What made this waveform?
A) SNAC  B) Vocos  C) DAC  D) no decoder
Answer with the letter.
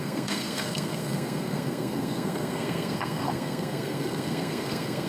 A